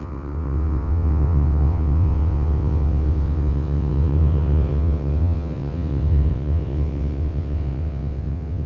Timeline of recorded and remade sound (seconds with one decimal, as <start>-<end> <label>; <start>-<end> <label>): 0.0-8.7 remade

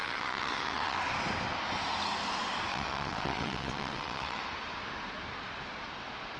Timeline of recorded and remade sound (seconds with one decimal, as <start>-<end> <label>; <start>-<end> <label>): 0.0-1.0 remade; 1.0-2.7 recorded; 2.7-4.4 remade; 4.4-6.4 recorded

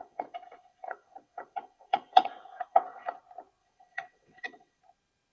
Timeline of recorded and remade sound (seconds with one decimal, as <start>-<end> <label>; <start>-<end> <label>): 0.0-3.2 remade; 3.2-3.6 recorded; 3.6-4.8 remade; 4.8-5.3 recorded